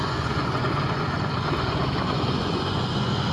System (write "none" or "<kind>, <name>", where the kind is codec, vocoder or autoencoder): vocoder, Vocos